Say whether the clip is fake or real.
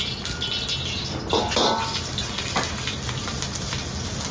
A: real